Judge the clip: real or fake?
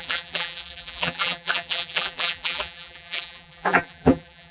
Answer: fake